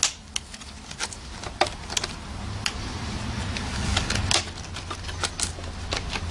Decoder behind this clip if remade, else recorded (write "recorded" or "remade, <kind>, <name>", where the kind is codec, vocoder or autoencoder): recorded